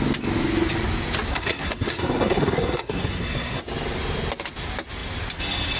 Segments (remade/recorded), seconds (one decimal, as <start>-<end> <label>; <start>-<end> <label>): 0.0-1.3 recorded; 1.3-3.6 remade; 3.6-5.8 recorded